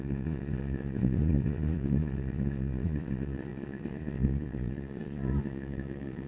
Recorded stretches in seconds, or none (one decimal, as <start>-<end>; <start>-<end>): none